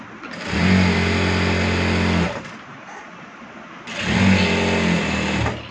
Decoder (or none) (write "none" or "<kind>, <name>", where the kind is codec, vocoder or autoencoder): none